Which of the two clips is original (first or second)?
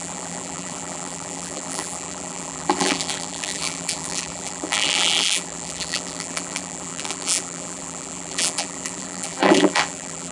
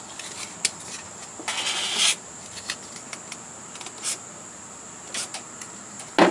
second